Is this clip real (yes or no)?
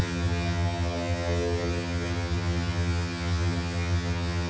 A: no